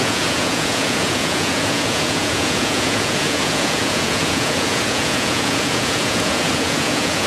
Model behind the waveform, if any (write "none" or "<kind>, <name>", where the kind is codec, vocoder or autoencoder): vocoder, Vocos